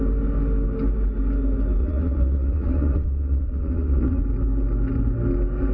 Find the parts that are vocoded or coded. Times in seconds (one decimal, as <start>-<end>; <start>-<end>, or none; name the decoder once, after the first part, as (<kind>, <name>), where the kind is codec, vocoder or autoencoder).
1.8-4.2 (vocoder, Vocos)

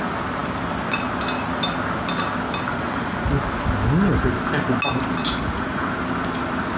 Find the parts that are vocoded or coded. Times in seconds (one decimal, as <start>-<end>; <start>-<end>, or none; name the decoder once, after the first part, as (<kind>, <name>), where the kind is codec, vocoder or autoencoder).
2.7-3.3 (vocoder, Vocos); 5.2-5.9

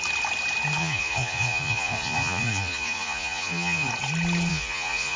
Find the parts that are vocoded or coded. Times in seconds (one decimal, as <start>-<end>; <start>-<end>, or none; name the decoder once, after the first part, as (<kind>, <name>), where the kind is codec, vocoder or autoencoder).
0.8-3.9 (vocoder, Vocos); 4.5-5.2

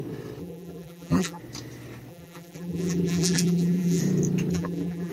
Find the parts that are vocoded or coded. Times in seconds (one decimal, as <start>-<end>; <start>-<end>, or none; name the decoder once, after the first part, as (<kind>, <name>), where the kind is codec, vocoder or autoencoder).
0.4-1.4 (vocoder, BigVGAN v2); 2.1-4.0; 4.5-5.1

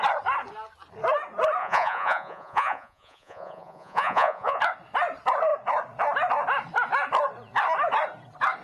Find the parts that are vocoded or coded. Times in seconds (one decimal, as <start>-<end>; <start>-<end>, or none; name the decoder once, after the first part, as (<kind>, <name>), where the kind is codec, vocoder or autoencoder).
1.6-4.6 (vocoder, Vocos)

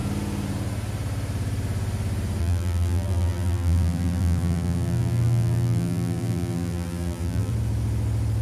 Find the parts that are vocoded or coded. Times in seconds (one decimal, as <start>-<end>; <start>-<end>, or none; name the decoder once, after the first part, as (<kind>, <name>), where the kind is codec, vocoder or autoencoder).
2.4-7.5 (vocoder, BigVGAN v2)

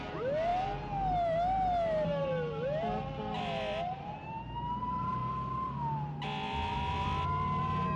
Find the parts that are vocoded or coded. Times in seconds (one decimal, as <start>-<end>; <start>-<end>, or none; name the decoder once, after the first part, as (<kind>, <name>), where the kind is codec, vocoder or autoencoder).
none

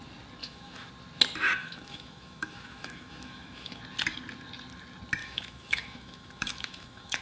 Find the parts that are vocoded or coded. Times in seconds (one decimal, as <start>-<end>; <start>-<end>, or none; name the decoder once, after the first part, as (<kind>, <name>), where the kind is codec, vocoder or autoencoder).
0.4-0.9 (autoencoder, DAC-VAE); 1.6-3.8; 5.2-7.2